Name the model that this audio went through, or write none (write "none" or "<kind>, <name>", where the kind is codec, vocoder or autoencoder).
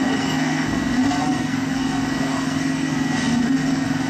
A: codec, SNAC